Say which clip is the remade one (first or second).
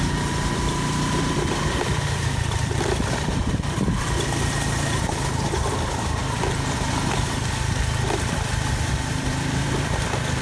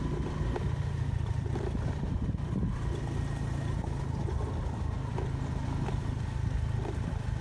first